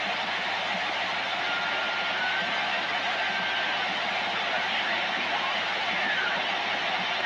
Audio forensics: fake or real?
real